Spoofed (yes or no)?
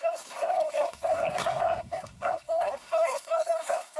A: yes